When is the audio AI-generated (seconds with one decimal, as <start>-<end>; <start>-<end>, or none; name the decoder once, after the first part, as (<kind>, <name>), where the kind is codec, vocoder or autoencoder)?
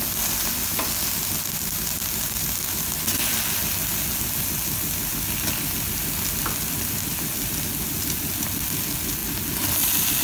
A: none